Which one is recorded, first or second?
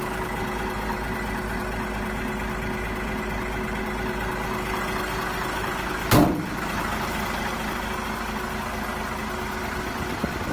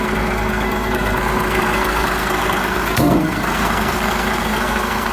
first